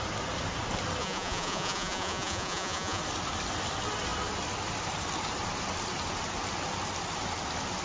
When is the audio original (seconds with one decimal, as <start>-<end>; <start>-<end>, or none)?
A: 0.0-1.0; 3.0-7.8